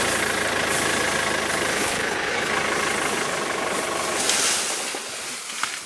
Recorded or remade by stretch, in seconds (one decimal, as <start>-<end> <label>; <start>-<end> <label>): 0.0-1.7 recorded; 1.7-2.5 remade; 2.5-5.9 recorded